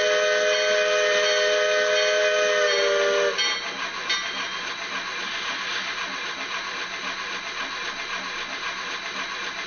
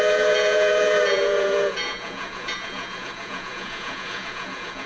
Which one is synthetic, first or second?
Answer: second